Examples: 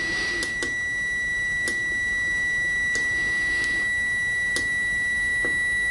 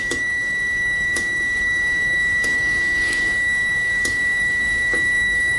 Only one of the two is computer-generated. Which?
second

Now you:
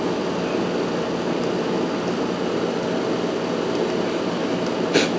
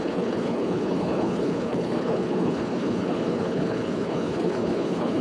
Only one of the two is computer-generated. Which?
second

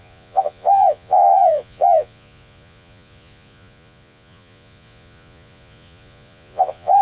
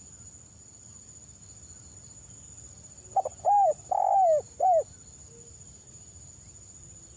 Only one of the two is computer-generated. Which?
first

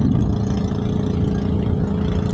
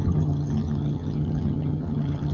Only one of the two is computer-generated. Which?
second